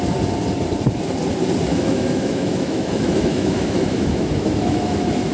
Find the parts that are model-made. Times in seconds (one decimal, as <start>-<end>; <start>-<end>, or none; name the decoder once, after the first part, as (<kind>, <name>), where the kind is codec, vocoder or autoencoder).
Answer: 1.7-5.3 (autoencoder, DAC-VAE)